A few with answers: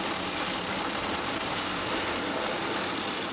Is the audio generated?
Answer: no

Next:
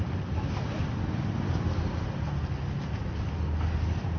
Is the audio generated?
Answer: no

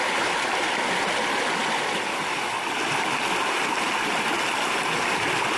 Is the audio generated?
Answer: no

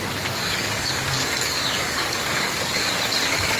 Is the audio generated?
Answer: yes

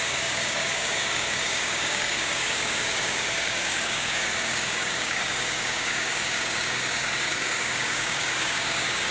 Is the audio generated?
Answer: yes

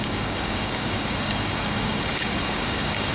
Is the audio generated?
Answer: yes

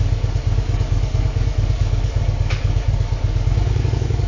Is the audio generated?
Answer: yes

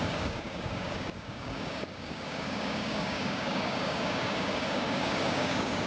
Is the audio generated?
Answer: yes